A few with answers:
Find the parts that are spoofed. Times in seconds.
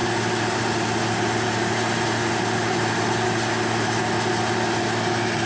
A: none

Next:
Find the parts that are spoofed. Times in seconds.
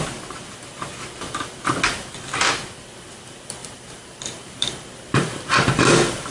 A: 3.6-5.6 (vocoder, BigVGAN v2)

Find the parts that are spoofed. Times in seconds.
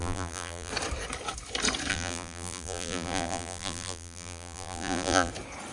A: 0.0-0.7 (vocoder, BigVGAN v2); 1.9-5.3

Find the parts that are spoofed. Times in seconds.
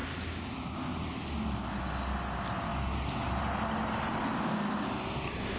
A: none